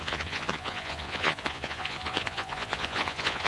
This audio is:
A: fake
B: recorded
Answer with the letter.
A